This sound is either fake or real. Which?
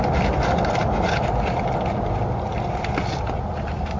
fake